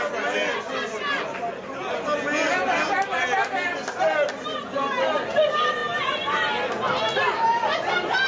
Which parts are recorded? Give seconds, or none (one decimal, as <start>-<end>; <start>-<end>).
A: 0.0-8.3